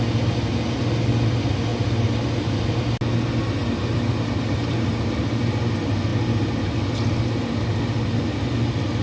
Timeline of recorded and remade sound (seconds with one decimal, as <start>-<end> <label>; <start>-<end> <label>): 0.0-9.0 recorded